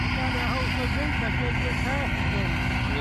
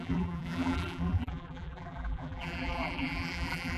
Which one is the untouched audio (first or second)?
first